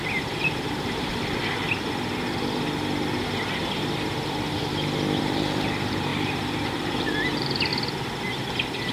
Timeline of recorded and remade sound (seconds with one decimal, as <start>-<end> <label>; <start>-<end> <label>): 0.0-1.1 remade; 1.1-3.6 recorded; 3.6-4.6 remade; 4.6-5.2 recorded; 5.2-7.7 remade; 7.7-8.9 recorded